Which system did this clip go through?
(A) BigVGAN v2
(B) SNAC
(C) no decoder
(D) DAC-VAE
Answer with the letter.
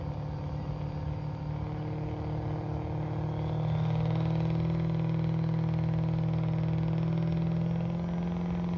C